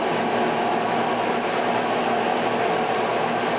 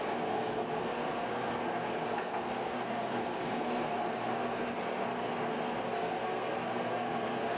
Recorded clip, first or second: first